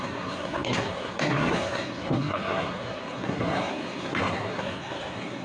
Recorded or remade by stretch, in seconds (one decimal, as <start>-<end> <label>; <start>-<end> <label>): 0.0-5.4 remade